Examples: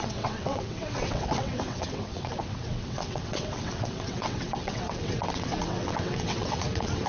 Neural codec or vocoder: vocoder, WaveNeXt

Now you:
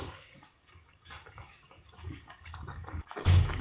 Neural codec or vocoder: codec, DAC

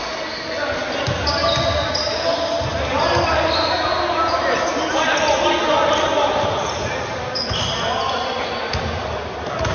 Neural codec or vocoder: none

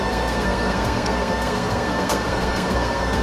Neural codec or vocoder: codec, SNAC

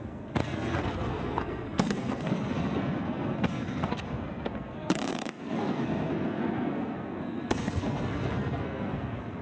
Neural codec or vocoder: codec, SNAC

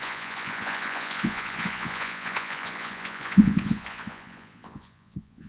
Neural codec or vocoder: vocoder, Vocos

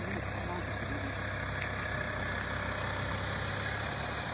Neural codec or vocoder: none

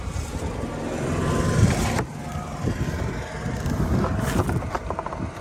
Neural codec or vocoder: none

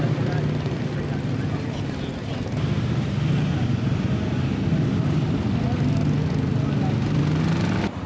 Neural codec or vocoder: none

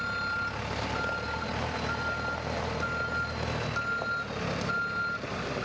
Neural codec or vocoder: none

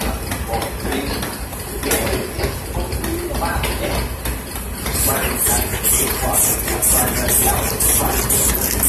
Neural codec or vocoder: none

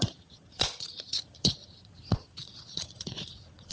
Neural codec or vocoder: vocoder, Vocos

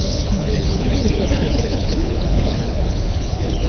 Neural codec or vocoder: codec, HILCodec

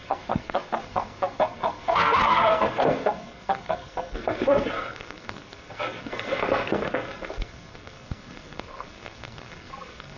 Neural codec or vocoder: codec, SNAC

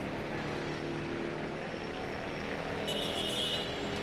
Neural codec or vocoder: none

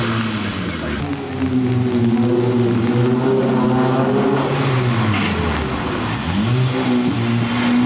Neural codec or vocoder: none